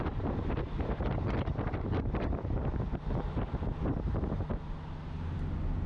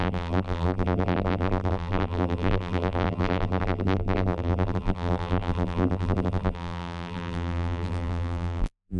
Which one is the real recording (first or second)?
first